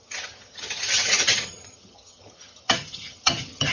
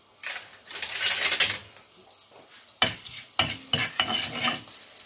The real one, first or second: second